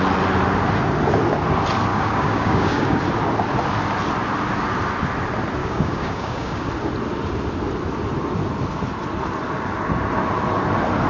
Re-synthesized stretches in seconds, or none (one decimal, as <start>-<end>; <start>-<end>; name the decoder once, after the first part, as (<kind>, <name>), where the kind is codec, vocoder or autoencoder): 1.9-3.0 (codec, DAC); 5.6-6.7